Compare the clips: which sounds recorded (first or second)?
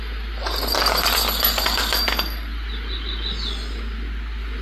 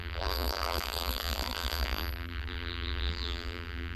first